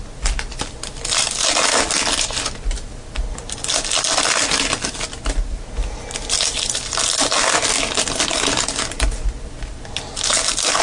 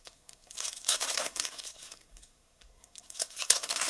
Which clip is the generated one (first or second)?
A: second